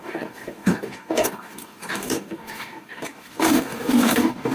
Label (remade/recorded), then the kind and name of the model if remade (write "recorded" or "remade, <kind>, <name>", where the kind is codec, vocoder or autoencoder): remade, codec, DAC